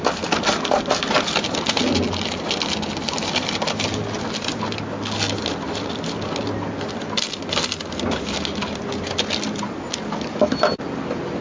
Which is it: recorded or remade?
recorded